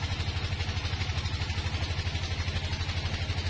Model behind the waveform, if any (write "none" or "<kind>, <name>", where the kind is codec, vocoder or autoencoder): none